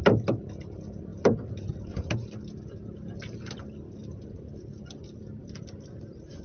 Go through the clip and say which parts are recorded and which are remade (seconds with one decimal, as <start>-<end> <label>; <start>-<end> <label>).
0.0-6.4 recorded